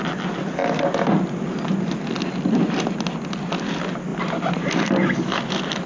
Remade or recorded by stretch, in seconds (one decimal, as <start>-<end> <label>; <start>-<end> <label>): 0.0-5.9 recorded